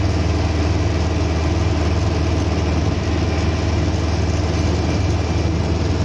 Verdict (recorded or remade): recorded